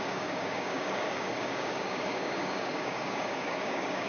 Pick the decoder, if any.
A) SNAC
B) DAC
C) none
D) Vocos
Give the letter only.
B